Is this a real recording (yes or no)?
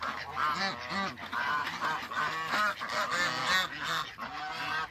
yes